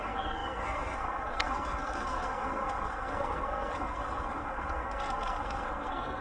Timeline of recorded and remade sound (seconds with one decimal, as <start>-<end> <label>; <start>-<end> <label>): 0.0-6.2 remade